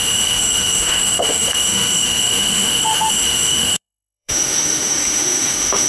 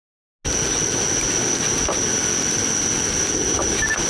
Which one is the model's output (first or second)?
first